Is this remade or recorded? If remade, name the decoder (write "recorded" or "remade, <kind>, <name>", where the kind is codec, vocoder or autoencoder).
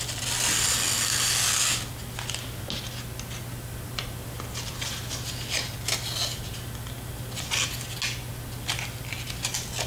recorded